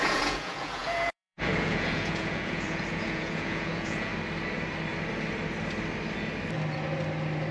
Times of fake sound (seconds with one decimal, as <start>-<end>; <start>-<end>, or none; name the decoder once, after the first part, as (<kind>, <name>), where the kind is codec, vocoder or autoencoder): 0.0-4.1 (vocoder, Vocos)